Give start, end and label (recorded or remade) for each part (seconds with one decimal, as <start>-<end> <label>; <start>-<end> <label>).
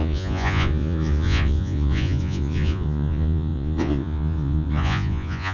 0.0-5.5 remade